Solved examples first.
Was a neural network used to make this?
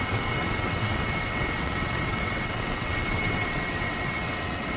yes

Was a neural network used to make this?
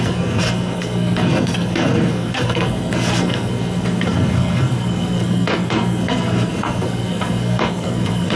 yes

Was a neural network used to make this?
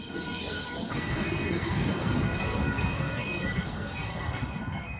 yes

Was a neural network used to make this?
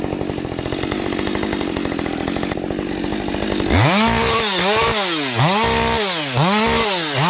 no